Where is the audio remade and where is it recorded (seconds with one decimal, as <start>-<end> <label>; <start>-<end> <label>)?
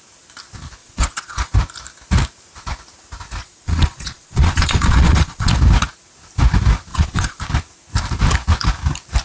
0.0-0.8 recorded; 0.8-1.5 remade; 1.5-3.4 recorded; 3.4-5.5 remade; 5.5-6.9 recorded; 6.9-7.4 remade; 7.4-9.2 recorded